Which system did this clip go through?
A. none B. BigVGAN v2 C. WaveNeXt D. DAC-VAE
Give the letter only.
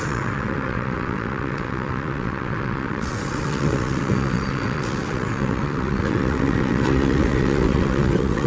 C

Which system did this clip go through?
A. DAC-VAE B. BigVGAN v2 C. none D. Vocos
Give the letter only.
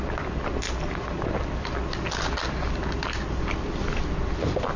C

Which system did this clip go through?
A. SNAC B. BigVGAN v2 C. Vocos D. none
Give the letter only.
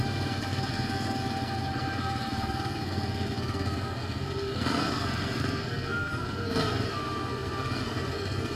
A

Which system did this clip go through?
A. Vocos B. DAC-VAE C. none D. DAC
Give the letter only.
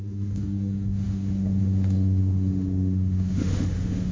B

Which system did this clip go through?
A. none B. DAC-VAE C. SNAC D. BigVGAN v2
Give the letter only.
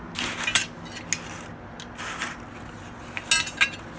A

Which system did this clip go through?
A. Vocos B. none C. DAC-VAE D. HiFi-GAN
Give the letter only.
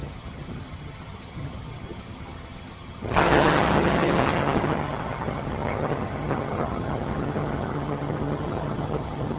D